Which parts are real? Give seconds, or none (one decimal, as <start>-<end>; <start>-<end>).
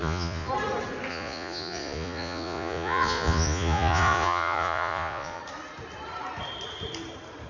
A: 0.5-1.1; 5.4-7.5